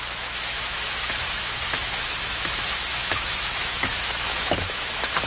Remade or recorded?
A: remade